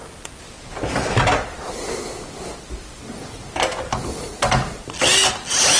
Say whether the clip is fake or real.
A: real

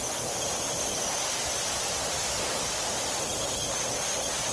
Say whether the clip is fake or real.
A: real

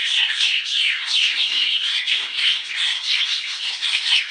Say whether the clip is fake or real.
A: fake